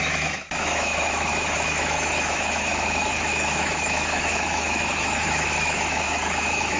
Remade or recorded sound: remade